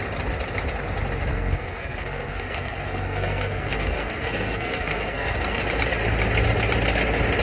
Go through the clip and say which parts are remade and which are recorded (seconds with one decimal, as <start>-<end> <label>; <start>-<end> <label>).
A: 0.0-1.3 recorded; 1.3-5.6 remade; 5.6-7.4 recorded